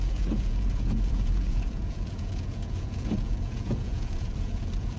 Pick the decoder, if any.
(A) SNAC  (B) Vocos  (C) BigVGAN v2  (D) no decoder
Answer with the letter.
B